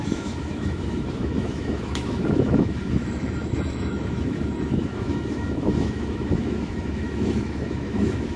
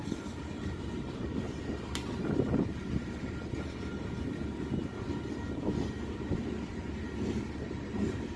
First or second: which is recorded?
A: second